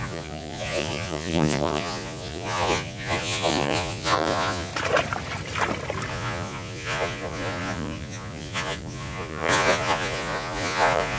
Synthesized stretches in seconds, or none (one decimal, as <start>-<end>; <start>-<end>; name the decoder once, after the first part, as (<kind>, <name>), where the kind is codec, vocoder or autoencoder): 0.0-4.7 (vocoder, Vocos); 6.1-11.2